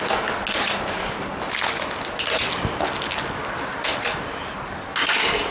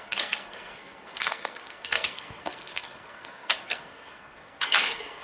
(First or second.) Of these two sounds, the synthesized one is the second